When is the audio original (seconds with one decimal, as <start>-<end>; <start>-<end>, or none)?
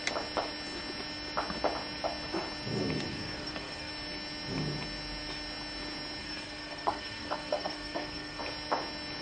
0.0-3.1; 3.9-6.2; 8.4-9.2